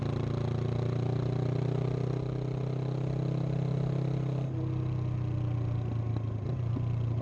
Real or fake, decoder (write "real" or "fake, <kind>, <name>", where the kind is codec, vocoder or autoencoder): real